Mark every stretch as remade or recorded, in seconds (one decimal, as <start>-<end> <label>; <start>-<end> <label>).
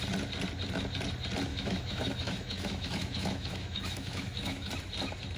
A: 0.0-1.5 recorded; 1.5-4.7 remade; 4.7-5.4 recorded